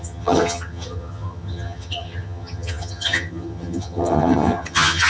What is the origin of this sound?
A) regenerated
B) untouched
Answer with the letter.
A